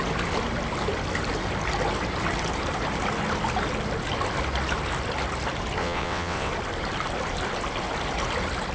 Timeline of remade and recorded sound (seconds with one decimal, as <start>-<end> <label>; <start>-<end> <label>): 0.0-5.8 recorded; 5.8-6.5 remade; 6.5-8.7 recorded